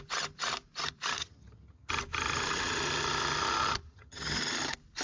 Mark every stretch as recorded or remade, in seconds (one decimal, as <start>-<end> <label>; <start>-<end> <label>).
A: 0.0-1.2 recorded; 1.2-1.9 remade; 1.9-3.9 recorded; 3.9-4.4 remade; 4.4-5.0 recorded